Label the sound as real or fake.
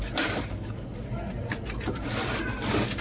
real